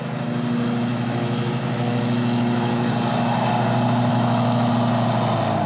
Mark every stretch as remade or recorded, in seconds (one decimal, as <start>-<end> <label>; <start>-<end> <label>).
0.0-0.9 recorded; 0.9-2.9 remade; 2.9-4.1 recorded; 4.1-4.7 remade; 4.7-5.7 recorded